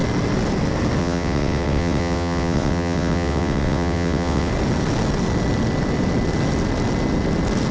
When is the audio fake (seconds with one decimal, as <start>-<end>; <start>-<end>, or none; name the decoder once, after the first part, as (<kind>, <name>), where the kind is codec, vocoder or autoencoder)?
1.0-4.5 (vocoder, WaveNeXt)